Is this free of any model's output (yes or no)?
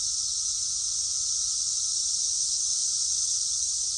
yes